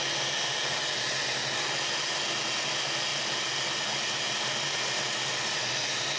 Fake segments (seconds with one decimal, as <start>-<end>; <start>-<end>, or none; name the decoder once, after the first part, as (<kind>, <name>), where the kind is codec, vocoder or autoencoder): none